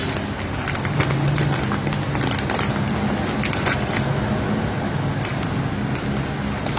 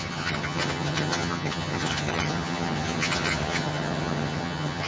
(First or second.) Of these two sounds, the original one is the first